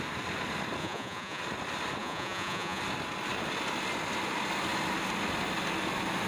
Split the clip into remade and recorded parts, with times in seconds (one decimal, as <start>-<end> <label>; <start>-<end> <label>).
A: 0.0-0.8 recorded; 0.8-1.4 remade; 1.4-2.0 recorded; 2.0-2.8 remade; 2.8-6.3 recorded